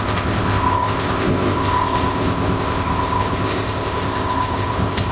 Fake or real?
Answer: fake